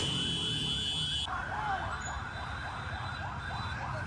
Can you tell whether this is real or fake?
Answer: real